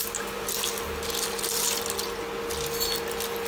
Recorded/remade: recorded